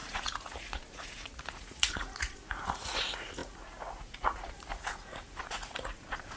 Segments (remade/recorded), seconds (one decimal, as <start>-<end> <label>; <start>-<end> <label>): 0.0-6.4 remade